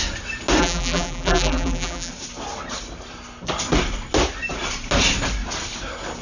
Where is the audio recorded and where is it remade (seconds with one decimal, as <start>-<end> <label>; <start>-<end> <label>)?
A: 0.0-0.6 recorded; 0.6-2.1 remade; 2.1-6.2 recorded